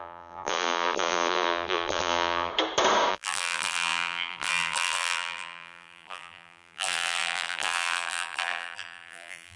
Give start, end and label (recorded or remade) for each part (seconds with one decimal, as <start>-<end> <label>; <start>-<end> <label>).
0.0-2.5 remade; 2.5-3.1 recorded; 3.1-9.6 remade